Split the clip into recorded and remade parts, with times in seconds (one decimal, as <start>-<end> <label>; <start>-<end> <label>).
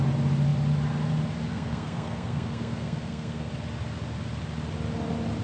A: 0.0-1.5 recorded; 1.5-3.5 remade; 3.5-5.4 recorded